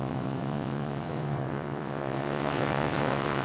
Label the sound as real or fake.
fake